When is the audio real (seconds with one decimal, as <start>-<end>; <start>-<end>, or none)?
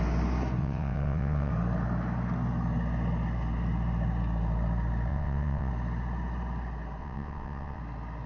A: 0.0-0.6; 1.5-5.1; 5.7-7.0; 7.8-8.3